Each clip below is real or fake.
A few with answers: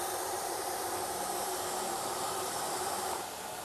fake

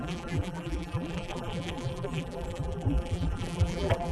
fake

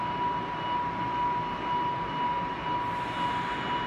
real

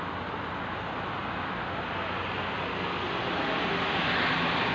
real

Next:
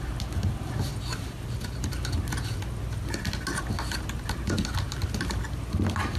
real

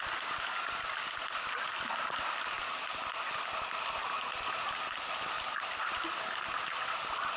real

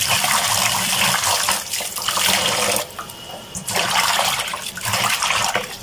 fake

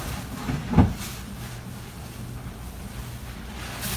real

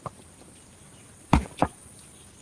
fake